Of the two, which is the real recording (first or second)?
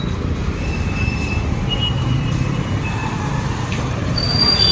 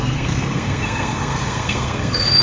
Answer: first